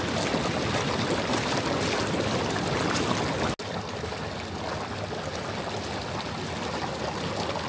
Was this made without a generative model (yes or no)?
yes